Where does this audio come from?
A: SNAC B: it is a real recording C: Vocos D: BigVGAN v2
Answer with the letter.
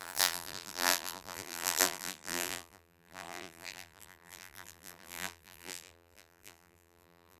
D